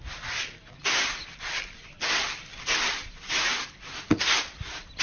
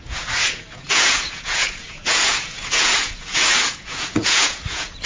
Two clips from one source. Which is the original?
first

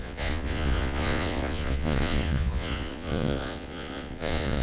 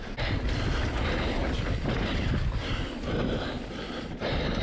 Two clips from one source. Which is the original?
second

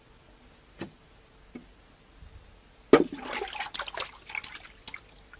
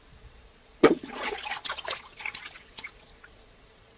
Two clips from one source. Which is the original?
first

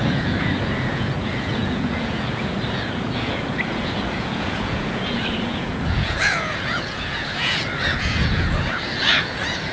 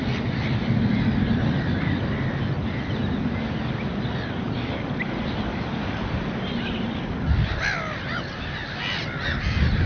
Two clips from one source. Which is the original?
second